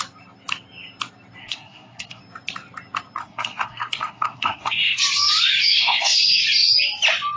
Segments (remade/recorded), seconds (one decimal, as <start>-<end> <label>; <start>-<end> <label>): 0.0-1.4 recorded; 1.4-2.2 remade; 2.2-3.2 recorded; 3.2-5.0 remade; 5.0-5.6 recorded; 5.6-6.4 remade; 6.4-7.4 recorded